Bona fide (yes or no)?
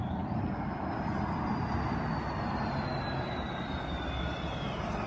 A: yes